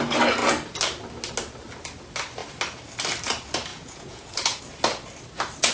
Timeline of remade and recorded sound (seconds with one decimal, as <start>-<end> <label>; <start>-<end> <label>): 0.0-3.7 recorded; 3.7-4.6 remade; 4.6-5.7 recorded